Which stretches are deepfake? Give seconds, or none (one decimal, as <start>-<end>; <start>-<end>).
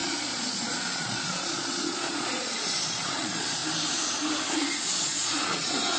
0.0-3.6; 4.5-6.0